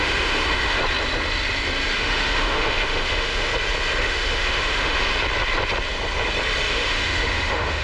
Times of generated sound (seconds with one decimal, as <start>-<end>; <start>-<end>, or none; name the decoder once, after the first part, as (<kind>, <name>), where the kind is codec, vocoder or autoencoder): 0.0-0.8 (autoencoder, DAC-VAE); 1.9-3.5; 4.0-5.1; 6.7-7.8